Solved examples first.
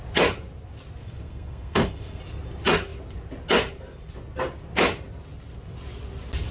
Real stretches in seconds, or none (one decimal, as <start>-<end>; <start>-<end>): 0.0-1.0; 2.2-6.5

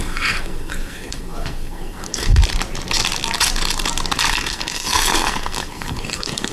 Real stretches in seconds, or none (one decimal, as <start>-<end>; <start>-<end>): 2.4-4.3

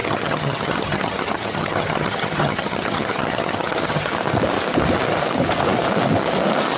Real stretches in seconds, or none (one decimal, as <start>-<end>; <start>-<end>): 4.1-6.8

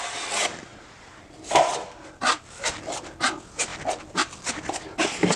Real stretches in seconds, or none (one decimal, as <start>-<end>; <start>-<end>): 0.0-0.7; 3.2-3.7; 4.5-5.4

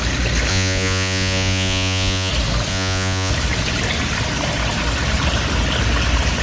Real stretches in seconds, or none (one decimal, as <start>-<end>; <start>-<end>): 0.0-0.5; 2.3-2.7; 3.3-6.4

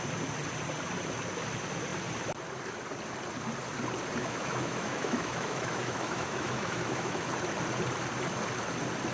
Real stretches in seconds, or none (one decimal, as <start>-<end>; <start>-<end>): 0.0-4.2; 7.3-9.1

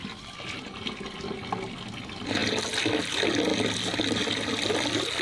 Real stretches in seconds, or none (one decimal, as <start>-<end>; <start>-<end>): 0.0-5.2

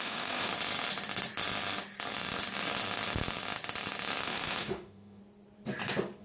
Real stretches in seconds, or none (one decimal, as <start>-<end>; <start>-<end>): 0.5-4.2; 5.2-6.2